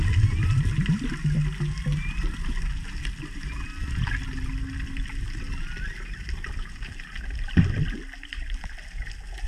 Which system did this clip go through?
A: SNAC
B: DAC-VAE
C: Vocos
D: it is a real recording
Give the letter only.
D